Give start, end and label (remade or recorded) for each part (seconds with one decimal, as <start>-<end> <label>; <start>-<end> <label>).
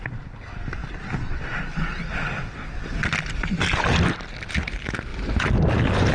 0.0-5.1 recorded; 5.1-6.1 remade